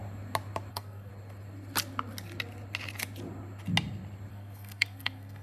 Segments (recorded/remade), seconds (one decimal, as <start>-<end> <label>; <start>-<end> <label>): 0.0-0.7 recorded; 0.7-1.1 remade; 1.1-4.3 recorded; 4.3-5.4 remade